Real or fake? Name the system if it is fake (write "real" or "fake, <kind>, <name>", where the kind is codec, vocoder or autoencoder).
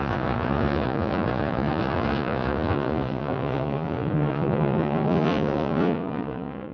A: fake, vocoder, Vocos